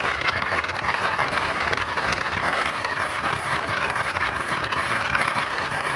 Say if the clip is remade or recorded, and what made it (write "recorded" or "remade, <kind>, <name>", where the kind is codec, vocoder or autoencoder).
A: remade, codec, SNAC